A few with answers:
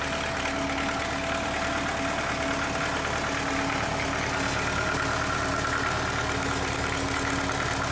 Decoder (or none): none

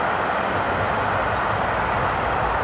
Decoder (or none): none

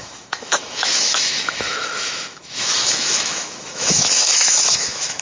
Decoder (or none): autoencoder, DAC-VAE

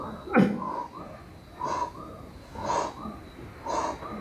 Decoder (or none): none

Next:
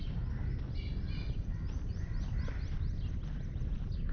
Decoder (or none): none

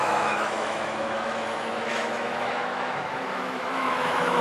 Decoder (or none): autoencoder, DAC-VAE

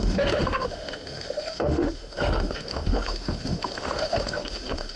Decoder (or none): autoencoder, DAC-VAE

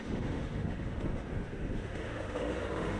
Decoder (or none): autoencoder, DAC-VAE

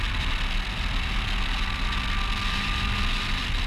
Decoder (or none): none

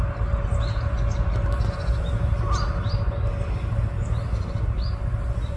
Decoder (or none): none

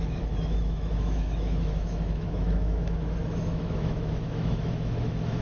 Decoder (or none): autoencoder, DAC-VAE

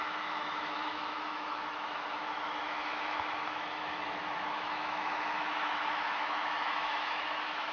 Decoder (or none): autoencoder, DAC-VAE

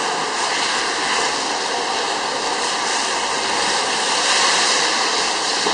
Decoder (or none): none